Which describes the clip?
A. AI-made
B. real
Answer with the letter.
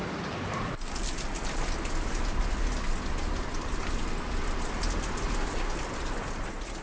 B